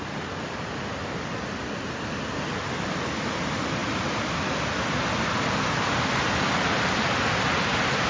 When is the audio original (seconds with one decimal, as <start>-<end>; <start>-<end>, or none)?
0.0-8.1